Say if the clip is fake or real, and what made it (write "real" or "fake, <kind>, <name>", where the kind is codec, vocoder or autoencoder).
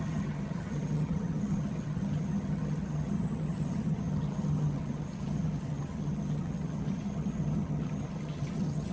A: fake, vocoder, HiFi-GAN